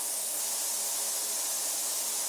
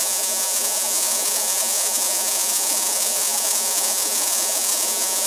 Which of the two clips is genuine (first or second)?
first